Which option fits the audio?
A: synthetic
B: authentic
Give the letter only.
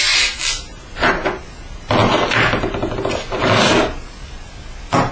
B